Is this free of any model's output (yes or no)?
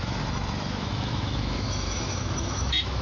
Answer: no